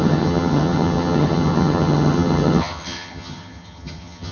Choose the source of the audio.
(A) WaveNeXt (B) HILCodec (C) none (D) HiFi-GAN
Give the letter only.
D